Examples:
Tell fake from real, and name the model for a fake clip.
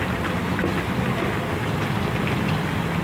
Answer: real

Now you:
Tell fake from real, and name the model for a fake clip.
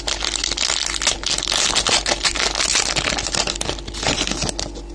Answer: real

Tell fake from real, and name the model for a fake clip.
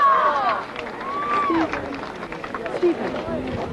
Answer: real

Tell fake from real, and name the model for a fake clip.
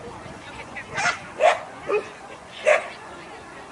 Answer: fake, vocoder, Vocos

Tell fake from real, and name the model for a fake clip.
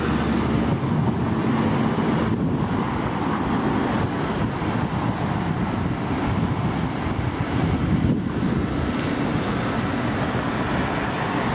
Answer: real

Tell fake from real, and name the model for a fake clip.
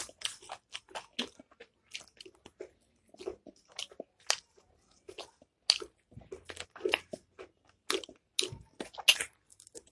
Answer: real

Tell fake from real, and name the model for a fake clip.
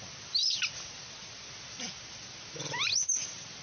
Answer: real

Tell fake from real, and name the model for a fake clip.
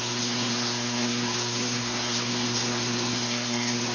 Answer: fake, codec, SNAC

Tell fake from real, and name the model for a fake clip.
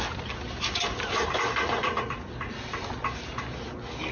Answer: real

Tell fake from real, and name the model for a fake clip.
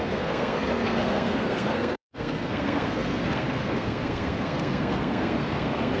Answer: fake, codec, SNAC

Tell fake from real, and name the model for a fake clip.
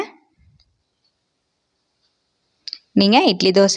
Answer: real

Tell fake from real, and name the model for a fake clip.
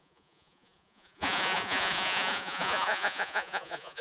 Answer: fake, vocoder, Vocos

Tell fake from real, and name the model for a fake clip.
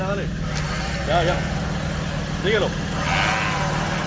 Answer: real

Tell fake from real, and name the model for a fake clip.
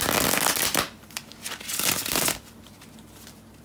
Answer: real